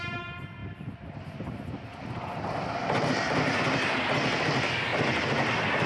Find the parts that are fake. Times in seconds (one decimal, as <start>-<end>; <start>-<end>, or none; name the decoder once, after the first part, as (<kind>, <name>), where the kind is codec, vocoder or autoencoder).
none